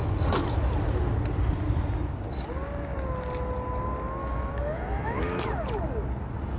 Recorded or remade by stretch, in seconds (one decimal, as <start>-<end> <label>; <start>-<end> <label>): 0.0-4.2 recorded; 4.2-5.4 remade; 5.4-6.6 recorded